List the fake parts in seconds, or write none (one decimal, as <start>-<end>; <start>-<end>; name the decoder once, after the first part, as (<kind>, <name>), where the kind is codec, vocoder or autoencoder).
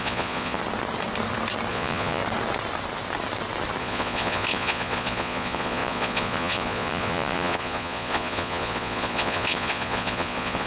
0.0-0.6 (vocoder, Vocos); 1.7-2.2; 3.8-10.7